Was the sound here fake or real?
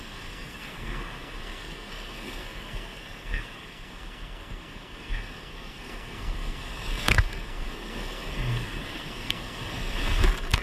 fake